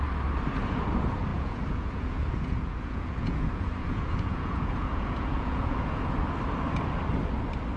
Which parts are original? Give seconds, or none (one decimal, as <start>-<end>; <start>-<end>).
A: 0.0-1.3; 6.0-7.8